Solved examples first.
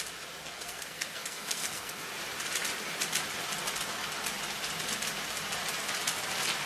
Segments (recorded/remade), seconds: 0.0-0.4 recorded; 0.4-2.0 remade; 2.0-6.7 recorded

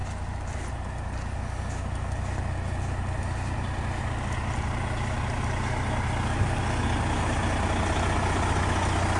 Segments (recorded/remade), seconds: 0.0-9.2 recorded

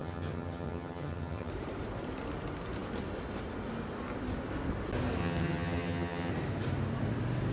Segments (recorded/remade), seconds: 0.0-1.5 remade; 1.5-5.2 recorded; 5.2-6.3 remade; 6.3-7.5 recorded

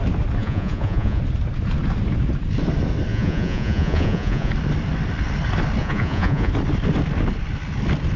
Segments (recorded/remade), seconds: 0.0-0.4 recorded; 0.4-1.2 remade; 1.2-3.1 recorded; 3.1-4.5 remade; 4.5-5.8 recorded; 5.8-6.5 remade; 6.5-8.2 recorded

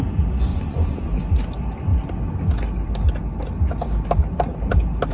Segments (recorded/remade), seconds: 0.0-0.5 recorded; 0.5-1.2 remade; 1.2-5.1 recorded

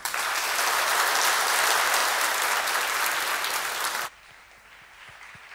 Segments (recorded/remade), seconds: 0.0-5.5 recorded

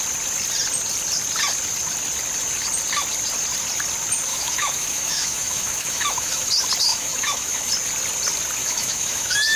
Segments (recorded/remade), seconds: 0.0-4.3 recorded; 4.3-6.5 remade; 6.5-6.9 recorded; 6.9-7.7 remade; 7.7-8.6 recorded; 8.6-9.6 remade

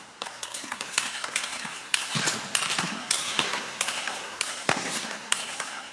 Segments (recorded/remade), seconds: 0.0-2.2 remade; 2.2-2.8 recorded; 2.8-5.9 remade